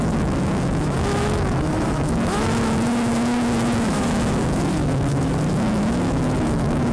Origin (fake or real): fake